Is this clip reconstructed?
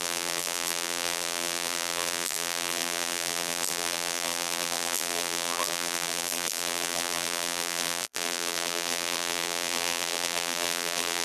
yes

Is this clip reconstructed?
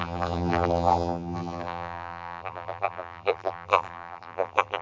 yes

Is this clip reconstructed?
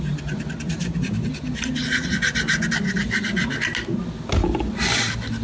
no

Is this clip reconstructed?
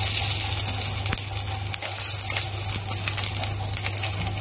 no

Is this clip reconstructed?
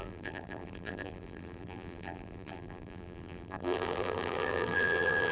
yes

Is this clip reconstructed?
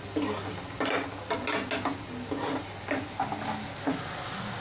no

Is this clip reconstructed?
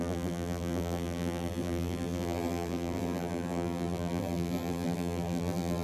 yes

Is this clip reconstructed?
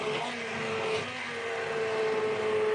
no